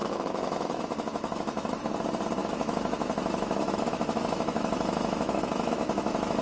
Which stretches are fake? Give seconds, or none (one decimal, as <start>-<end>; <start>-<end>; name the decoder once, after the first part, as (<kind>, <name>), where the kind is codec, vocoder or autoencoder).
0.0-1.8 (autoencoder, DAC-VAE); 2.4-6.4